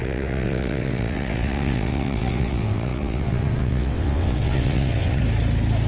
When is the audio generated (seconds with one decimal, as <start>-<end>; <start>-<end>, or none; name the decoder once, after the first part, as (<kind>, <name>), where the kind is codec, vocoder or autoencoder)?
0.0-5.2 (vocoder, WaveNeXt)